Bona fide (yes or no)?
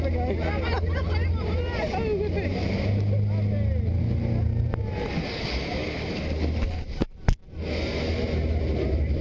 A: yes